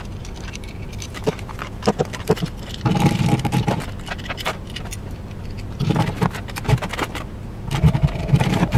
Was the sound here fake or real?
fake